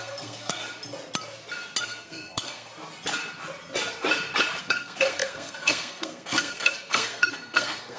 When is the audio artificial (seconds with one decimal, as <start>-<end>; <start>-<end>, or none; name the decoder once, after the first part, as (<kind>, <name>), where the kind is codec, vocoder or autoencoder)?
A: 0.0-0.6 (codec, SNAC); 1.8-2.7; 4.6-8.0